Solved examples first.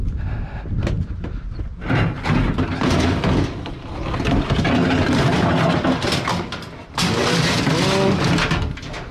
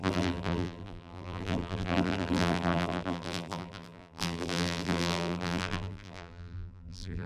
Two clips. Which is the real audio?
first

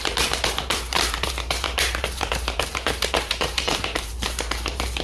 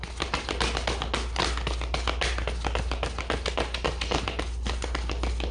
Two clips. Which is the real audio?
second